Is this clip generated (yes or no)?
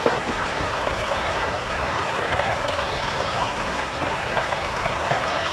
yes